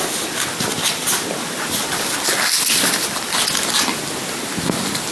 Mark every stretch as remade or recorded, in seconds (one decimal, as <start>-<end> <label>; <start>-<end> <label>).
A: 0.0-5.1 recorded